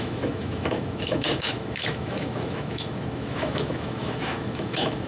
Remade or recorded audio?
remade